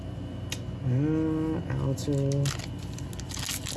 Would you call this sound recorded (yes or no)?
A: yes